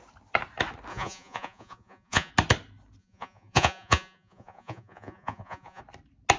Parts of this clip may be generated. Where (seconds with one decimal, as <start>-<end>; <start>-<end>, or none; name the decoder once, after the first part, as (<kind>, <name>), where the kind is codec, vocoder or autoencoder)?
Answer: 0.9-2.3 (vocoder, Vocos); 3.0-5.8